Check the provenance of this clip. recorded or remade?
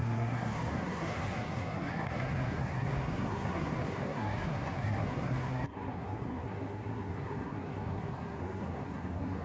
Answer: remade